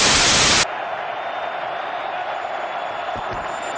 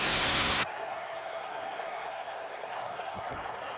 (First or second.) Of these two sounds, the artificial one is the second